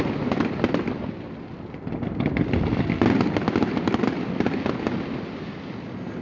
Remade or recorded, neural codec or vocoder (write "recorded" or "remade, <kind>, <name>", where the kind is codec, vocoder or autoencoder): recorded